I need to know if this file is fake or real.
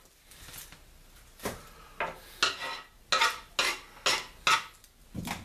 real